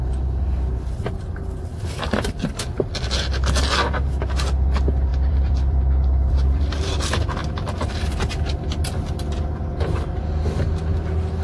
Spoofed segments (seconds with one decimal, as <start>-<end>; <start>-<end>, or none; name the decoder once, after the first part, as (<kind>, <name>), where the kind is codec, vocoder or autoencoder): 1.7-2.4 (vocoder, BigVGAN v2); 5.1-7.0; 7.4-10.2